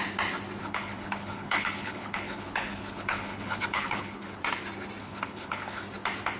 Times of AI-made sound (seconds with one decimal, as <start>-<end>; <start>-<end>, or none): 0.6-4.4; 5.0-5.8